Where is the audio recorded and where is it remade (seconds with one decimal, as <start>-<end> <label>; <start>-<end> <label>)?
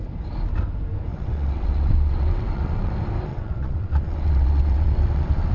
0.0-1.1 recorded; 1.1-2.9 remade; 2.9-3.3 recorded; 3.3-5.5 remade